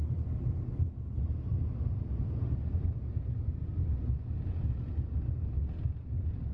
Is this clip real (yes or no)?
yes